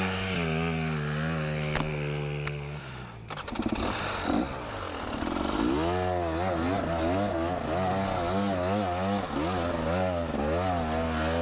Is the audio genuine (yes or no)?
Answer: yes